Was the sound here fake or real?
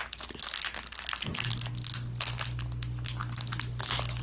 real